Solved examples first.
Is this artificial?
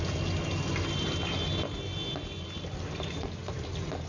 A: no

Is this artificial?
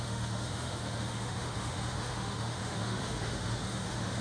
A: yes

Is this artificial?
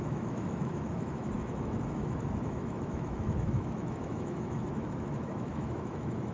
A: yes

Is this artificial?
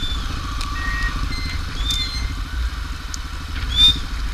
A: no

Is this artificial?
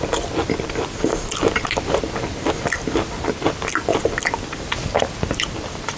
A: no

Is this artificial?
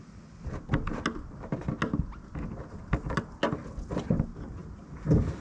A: no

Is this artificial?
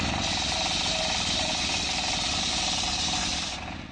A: no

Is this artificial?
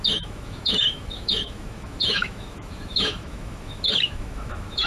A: yes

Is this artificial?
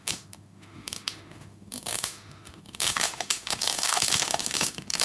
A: yes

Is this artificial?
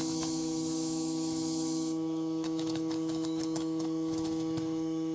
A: yes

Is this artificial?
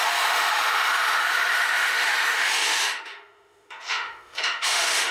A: yes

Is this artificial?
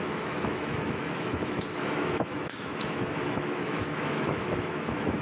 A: yes